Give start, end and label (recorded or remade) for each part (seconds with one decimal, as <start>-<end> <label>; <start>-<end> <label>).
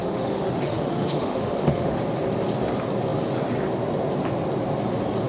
0.0-2.0 remade; 2.0-5.3 recorded